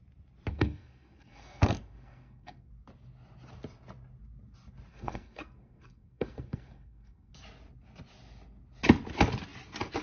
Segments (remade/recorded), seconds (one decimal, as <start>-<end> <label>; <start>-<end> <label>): 0.0-0.5 recorded; 0.5-2.7 remade; 2.7-4.9 recorded; 4.9-7.3 remade; 7.3-10.0 recorded